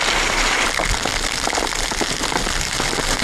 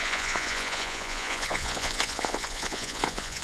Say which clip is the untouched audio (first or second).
first